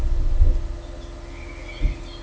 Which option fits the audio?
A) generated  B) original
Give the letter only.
B